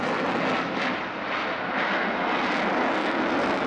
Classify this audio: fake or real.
real